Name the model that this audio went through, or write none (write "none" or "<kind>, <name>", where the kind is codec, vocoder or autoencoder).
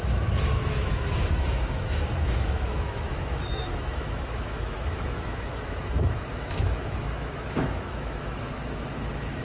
autoencoder, DAC-VAE